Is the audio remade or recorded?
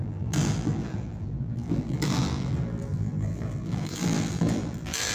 remade